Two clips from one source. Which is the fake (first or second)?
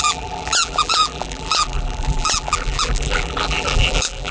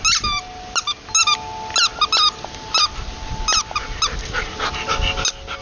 first